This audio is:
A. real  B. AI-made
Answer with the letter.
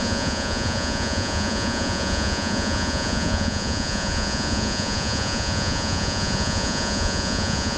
B